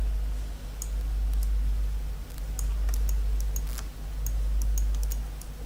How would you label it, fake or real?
real